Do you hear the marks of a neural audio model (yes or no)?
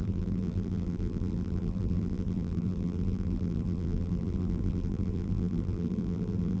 yes